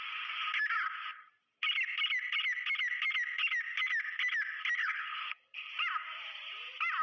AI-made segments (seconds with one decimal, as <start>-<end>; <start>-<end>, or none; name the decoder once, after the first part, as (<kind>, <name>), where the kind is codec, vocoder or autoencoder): 4.8-5.7 (codec, HILCodec)